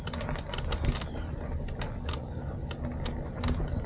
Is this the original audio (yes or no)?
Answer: yes